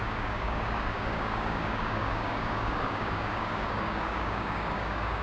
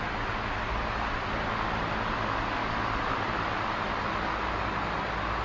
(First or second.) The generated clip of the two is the first